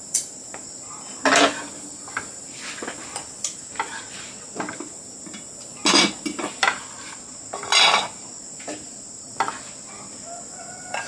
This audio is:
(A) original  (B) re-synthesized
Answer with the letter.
A